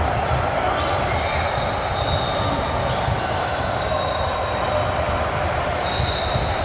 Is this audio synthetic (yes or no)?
no